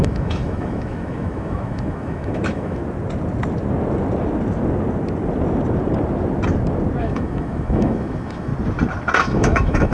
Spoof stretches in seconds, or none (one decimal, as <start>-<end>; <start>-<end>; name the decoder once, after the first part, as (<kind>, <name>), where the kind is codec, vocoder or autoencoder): 0.0-2.8 (autoencoder, DAC-VAE); 7.0-8.5; 9.2-9.9